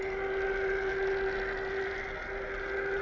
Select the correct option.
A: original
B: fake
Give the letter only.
A